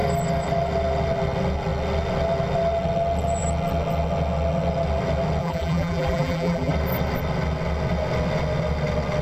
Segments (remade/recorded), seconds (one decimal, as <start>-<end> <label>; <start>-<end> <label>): 0.0-5.4 recorded; 5.4-6.7 remade; 6.7-9.2 recorded